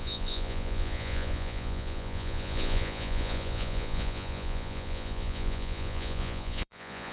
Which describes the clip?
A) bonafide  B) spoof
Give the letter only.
B